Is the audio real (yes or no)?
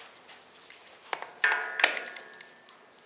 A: yes